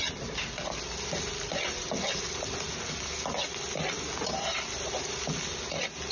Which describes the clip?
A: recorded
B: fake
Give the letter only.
A